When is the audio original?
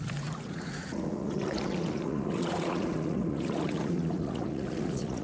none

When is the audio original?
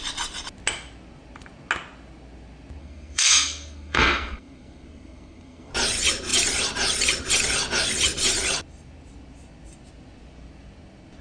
0.0-2.8; 5.7-11.2